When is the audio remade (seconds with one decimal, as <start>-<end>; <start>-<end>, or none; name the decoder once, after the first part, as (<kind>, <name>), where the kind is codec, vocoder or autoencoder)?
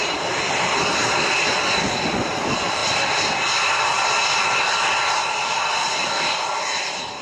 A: none